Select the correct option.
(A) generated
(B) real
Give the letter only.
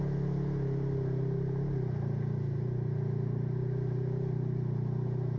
B